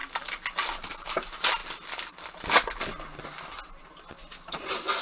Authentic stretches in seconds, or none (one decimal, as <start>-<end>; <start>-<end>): 0.0-5.0

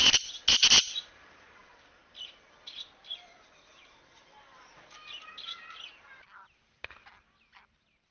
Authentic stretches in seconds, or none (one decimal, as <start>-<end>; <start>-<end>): 0.0-8.1

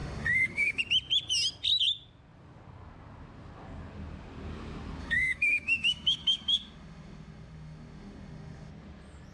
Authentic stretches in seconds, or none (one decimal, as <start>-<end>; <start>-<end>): 0.8-5.0; 8.7-9.3

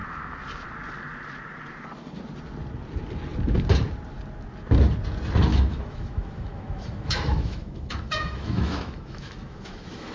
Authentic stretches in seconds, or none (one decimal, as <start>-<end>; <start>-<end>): 0.0-5.5

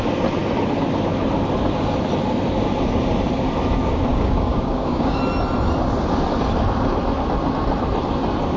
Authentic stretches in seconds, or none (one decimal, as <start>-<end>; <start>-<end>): 0.0-4.1; 5.2-8.6

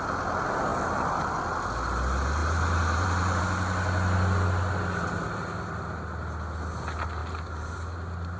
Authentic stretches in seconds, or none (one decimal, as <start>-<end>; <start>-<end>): 0.0-2.4; 3.4-7.2

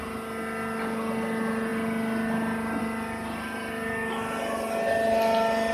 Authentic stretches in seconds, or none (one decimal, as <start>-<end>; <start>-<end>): 0.0-5.7

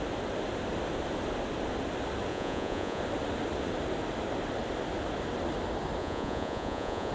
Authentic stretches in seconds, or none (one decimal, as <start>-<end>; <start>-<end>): 0.0-2.3; 3.0-6.0